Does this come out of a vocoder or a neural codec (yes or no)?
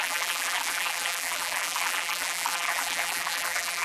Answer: yes